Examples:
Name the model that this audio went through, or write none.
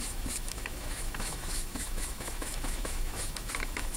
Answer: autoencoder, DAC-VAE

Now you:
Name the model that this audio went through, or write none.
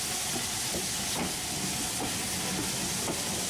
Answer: none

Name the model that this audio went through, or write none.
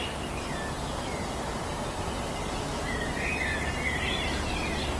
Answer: none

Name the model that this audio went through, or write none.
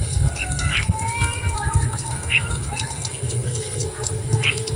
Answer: codec, SNAC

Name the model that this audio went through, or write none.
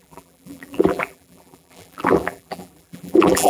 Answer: vocoder, BigVGAN v2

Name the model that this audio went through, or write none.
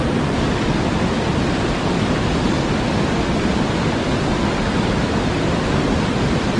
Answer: none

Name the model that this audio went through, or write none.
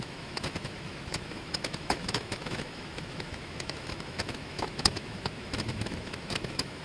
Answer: autoencoder, DAC-VAE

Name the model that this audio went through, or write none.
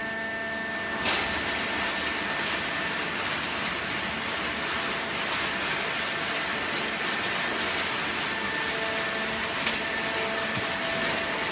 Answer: none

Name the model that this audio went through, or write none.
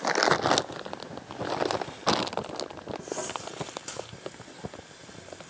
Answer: none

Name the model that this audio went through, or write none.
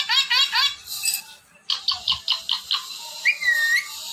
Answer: none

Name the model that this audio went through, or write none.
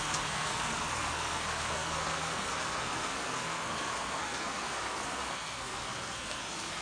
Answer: codec, SNAC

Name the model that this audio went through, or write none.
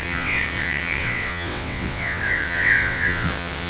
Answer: vocoder, WaveNeXt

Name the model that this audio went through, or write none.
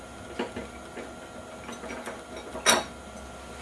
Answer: none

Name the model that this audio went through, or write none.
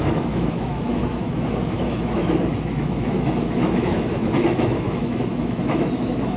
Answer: autoencoder, DAC-VAE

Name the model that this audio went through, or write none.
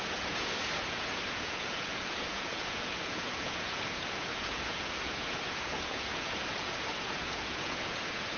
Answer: vocoder, Vocos